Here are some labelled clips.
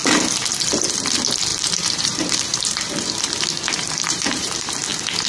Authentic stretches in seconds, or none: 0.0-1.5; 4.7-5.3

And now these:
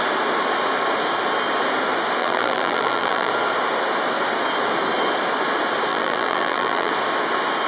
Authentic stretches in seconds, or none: 0.0-2.2; 3.3-5.9; 6.9-7.7

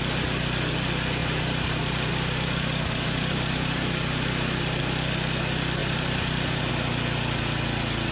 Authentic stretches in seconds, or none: 0.0-1.2; 4.8-5.8; 6.7-8.1

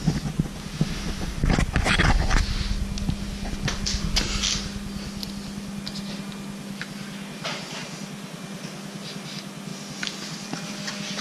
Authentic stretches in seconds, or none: 0.0-11.2

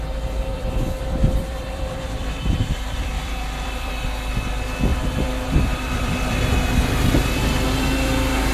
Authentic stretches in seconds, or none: 0.0-0.5; 3.9-4.9; 6.4-8.5

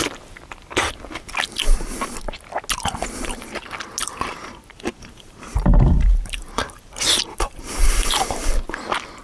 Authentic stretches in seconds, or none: 0.0-4.0; 8.5-9.2

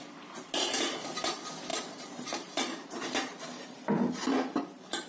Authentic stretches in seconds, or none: 0.0-1.7

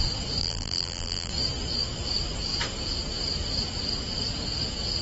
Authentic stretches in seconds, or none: 0.0-0.4; 1.3-5.0